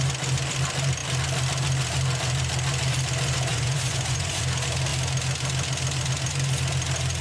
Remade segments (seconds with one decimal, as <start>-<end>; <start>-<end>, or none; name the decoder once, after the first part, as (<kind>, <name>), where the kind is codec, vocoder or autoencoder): 3.5-4.4 (vocoder, Vocos)